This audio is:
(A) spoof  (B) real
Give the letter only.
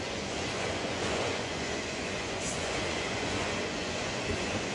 A